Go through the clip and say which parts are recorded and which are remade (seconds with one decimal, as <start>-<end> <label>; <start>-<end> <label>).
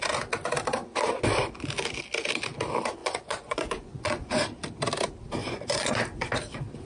0.0-3.0 recorded; 3.0-4.3 remade; 4.3-5.4 recorded; 5.4-6.0 remade; 6.0-6.9 recorded